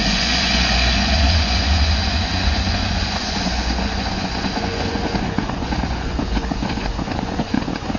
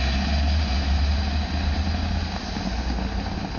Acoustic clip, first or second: second